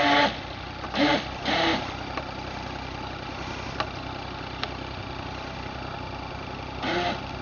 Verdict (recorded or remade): recorded